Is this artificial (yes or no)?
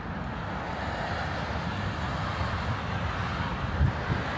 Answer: no